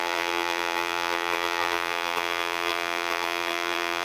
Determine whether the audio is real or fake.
fake